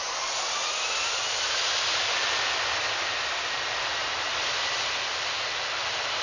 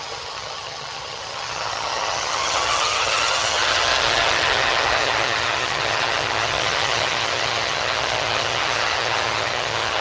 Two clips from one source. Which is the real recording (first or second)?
first